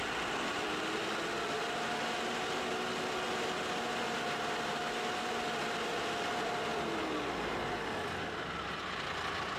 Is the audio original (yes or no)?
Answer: yes